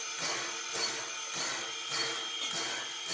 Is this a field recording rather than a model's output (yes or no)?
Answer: yes